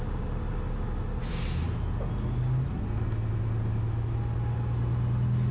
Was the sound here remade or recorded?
recorded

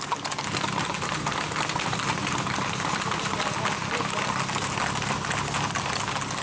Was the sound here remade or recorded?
recorded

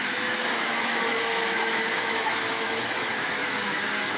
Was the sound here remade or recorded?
remade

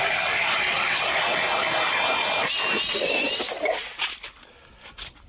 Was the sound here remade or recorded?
recorded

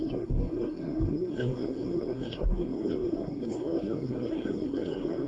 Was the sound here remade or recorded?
remade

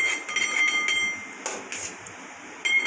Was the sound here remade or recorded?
recorded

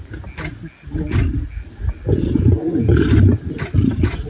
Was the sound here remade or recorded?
recorded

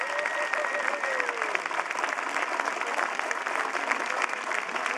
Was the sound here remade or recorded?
recorded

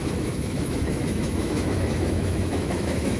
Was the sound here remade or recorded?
remade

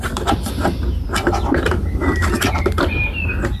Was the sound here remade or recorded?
recorded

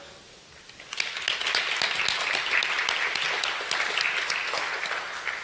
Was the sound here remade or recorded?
recorded